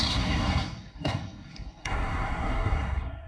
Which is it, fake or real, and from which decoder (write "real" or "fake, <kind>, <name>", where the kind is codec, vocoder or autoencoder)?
fake, codec, SNAC